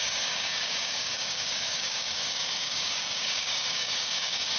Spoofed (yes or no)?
yes